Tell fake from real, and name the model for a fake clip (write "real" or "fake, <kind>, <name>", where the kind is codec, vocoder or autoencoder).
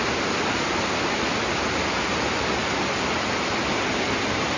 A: real